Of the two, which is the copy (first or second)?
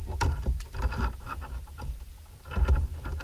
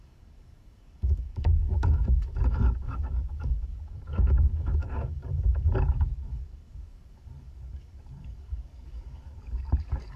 second